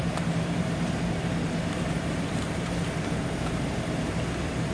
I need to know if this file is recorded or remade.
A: remade